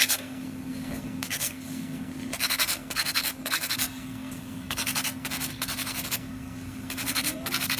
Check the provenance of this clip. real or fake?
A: fake